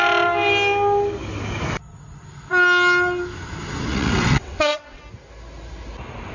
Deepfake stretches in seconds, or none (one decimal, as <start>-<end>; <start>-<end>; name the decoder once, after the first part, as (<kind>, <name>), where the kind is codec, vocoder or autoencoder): 3.9-5.0 (vocoder, WaveNeXt)